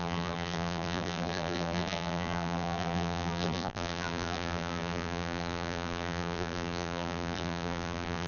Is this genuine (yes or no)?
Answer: no